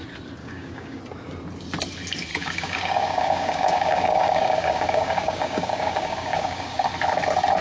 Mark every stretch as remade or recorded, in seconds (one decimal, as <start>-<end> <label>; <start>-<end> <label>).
0.0-0.4 recorded; 0.4-1.0 remade; 1.0-2.3 recorded; 2.3-6.9 remade; 6.9-7.6 recorded